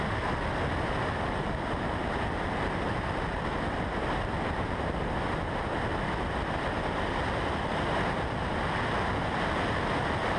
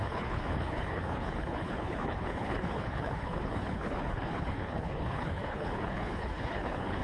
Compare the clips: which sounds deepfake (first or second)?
second